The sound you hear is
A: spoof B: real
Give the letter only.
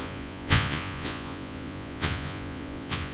A